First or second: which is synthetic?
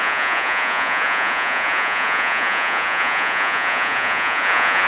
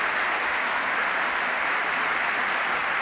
first